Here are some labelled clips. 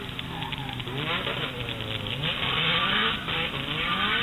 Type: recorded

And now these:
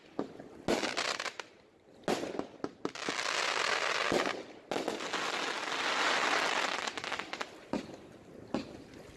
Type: recorded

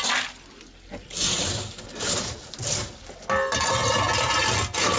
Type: recorded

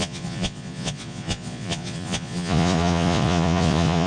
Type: remade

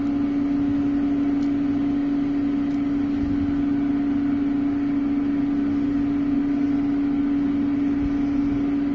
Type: recorded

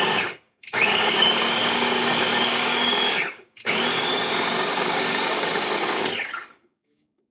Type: remade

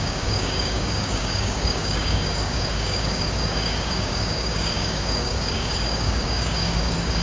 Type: remade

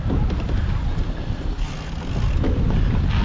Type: recorded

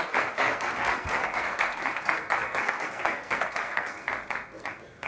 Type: remade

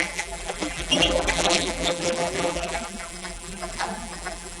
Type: remade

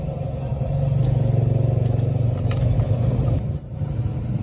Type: recorded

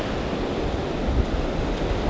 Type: recorded